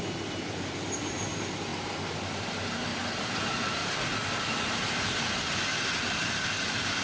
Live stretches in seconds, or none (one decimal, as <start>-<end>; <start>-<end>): 1.7-2.5; 2.9-3.4; 3.8-4.9